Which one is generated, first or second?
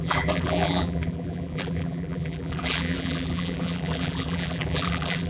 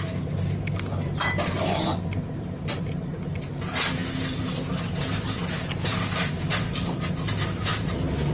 first